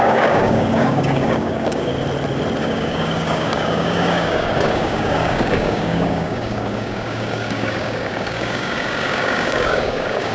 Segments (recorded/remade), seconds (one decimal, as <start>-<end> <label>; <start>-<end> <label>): 0.0-1.9 remade; 1.9-2.6 recorded; 2.6-10.3 remade